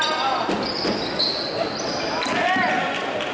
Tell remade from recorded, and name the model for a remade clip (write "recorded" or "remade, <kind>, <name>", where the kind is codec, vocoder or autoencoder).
recorded